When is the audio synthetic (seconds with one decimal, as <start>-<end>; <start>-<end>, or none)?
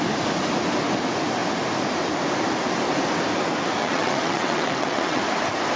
3.8-5.2